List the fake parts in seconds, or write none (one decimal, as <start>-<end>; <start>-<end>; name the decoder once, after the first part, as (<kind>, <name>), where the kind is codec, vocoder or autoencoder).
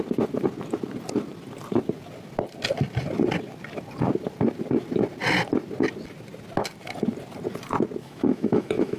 8.0-9.0 (autoencoder, DAC-VAE)